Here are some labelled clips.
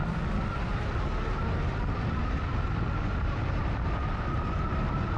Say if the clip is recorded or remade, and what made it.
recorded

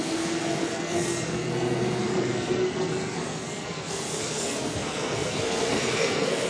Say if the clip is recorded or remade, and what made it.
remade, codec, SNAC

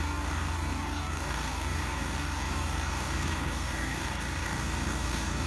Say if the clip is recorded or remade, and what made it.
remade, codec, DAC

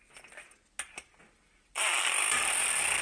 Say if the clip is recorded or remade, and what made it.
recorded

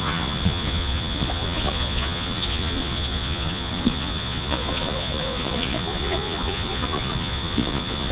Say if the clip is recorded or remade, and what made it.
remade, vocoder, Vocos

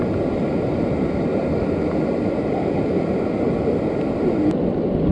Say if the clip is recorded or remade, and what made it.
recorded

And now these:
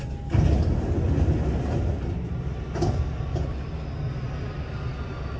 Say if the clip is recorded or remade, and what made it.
recorded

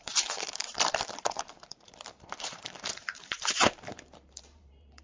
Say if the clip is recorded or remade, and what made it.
remade, vocoder, BigVGAN v2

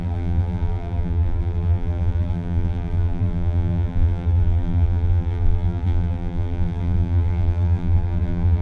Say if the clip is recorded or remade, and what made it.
remade, vocoder, BigVGAN v2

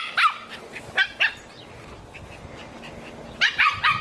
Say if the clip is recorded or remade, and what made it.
recorded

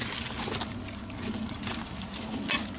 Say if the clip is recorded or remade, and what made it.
recorded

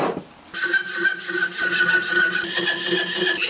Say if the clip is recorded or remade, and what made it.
recorded